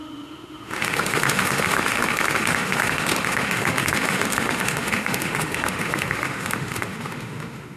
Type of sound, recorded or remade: remade